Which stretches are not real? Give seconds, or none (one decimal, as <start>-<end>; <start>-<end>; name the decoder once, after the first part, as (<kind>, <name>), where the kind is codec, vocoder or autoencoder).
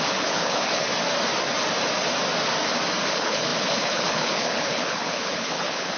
0.0-0.9 (codec, HILCodec); 3.1-6.0